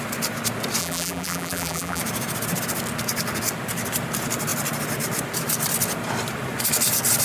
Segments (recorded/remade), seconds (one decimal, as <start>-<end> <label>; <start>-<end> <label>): 0.0-0.8 recorded; 0.8-2.0 remade; 2.0-7.2 recorded